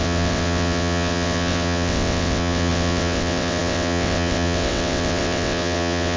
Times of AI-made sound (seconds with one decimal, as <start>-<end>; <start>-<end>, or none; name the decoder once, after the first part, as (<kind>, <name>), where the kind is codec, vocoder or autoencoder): 0.0-6.2 (vocoder, WaveNeXt)